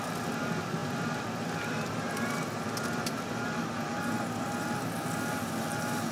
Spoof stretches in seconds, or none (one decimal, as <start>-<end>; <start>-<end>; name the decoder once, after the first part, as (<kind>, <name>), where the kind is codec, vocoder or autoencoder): none